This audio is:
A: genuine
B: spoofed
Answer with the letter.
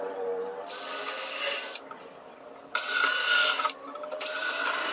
A